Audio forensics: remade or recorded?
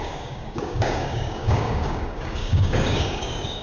remade